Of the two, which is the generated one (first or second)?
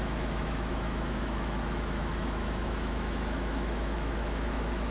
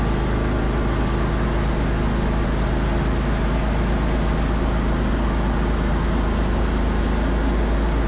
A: first